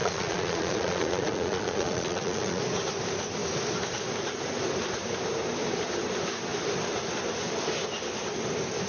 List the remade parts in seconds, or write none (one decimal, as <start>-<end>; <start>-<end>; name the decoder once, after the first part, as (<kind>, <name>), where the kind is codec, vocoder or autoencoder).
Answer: 0.0-2.6 (vocoder, Vocos)